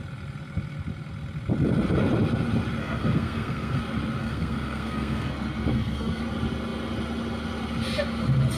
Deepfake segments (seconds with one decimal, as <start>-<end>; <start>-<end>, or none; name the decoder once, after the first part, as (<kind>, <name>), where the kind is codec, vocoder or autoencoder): 2.8-3.8 (codec, SNAC); 4.2-5.3; 5.7-6.2